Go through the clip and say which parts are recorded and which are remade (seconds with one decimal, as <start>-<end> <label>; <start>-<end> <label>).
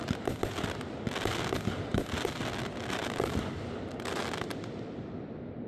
0.0-5.7 recorded